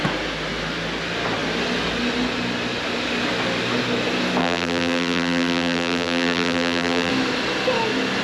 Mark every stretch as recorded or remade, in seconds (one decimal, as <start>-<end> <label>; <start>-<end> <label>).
0.0-4.4 recorded; 4.4-7.1 remade; 7.1-8.2 recorded